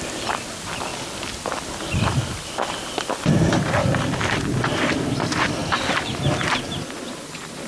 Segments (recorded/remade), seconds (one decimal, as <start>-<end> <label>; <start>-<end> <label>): 0.0-7.7 recorded